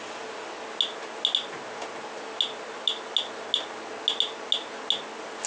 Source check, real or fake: real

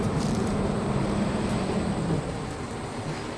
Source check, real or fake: fake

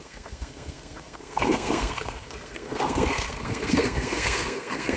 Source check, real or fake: fake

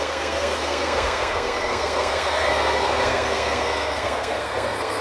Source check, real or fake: fake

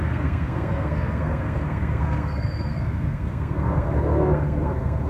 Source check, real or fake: fake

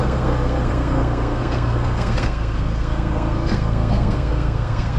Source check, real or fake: fake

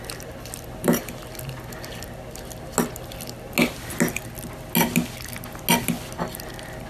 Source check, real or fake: real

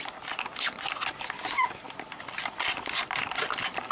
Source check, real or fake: real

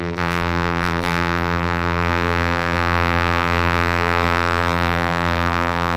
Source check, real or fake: fake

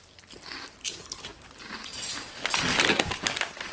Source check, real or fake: real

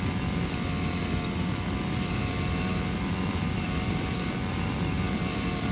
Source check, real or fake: fake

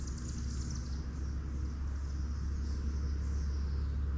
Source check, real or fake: real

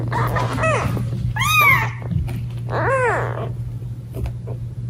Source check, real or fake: real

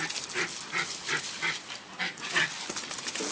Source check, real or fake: real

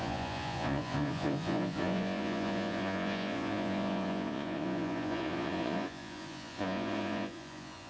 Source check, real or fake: fake